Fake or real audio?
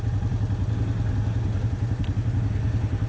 real